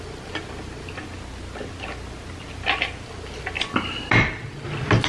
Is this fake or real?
real